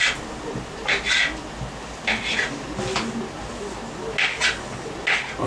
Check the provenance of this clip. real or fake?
real